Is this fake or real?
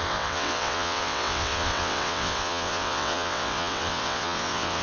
fake